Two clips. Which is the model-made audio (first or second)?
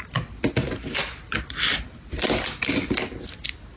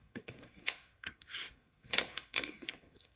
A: second